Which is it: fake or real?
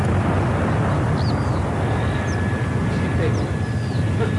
real